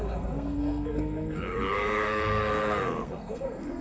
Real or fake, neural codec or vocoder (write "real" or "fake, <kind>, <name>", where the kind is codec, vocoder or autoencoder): fake, codec, SNAC